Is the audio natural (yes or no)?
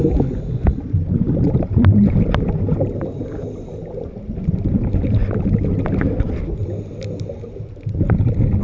yes